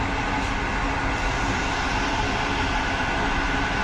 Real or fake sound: real